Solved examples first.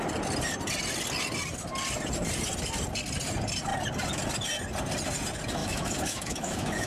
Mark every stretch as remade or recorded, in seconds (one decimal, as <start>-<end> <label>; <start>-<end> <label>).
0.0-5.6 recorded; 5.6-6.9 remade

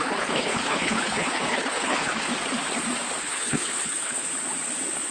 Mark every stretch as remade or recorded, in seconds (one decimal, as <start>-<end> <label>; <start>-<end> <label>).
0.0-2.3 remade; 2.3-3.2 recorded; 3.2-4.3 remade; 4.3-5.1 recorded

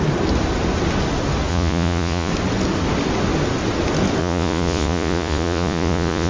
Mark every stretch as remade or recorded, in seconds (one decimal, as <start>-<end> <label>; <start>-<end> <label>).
0.0-1.5 recorded; 1.5-2.3 remade; 2.3-4.2 recorded; 4.2-6.3 remade

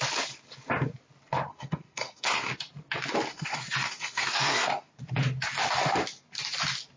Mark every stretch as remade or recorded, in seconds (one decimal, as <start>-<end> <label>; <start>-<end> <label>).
0.0-1.5 recorded; 1.5-2.5 remade; 2.5-3.3 recorded; 3.3-4.9 remade; 4.9-7.0 recorded